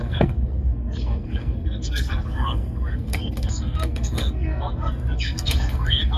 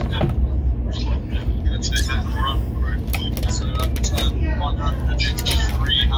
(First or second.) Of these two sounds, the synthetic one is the first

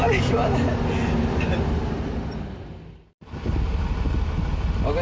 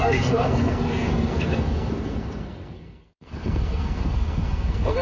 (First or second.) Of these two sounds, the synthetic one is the second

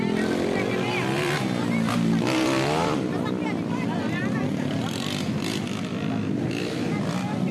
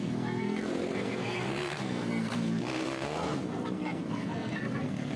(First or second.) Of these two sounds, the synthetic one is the second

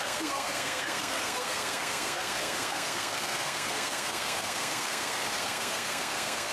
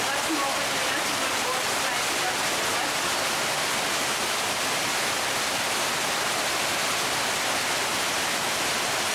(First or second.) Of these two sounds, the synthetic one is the first